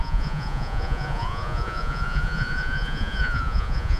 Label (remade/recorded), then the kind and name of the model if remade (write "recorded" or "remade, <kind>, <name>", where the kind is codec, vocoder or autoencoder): remade, vocoder, Vocos